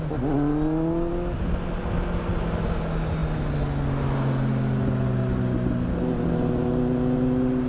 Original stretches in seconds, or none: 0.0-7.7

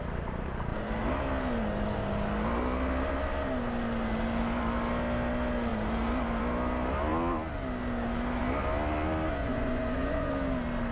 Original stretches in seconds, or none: 0.0-9.4; 10.3-10.9

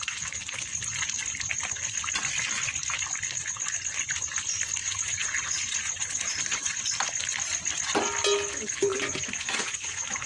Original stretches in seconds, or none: 0.0-4.8; 6.8-8.9

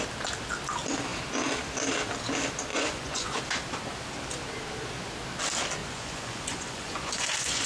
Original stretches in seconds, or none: 0.0-2.7; 3.4-5.8